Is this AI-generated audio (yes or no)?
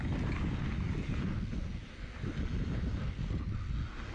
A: no